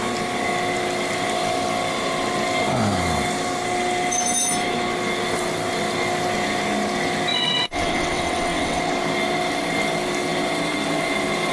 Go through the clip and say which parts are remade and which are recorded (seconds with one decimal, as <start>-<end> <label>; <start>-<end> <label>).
0.0-7.3 recorded; 7.3-8.8 remade; 8.8-11.5 recorded